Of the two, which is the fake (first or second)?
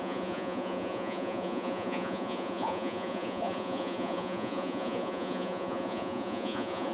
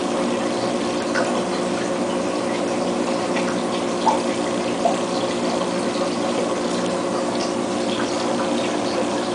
first